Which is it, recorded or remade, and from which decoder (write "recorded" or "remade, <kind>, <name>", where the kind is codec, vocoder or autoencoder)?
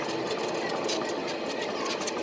recorded